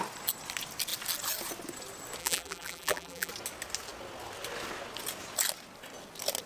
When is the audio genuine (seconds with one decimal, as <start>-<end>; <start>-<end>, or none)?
0.0-2.2; 3.3-6.5